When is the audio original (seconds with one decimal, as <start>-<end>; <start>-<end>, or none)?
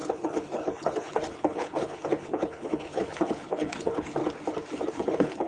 4.2-4.9